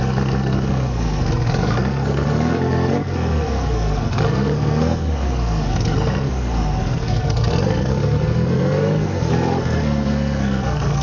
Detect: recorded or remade remade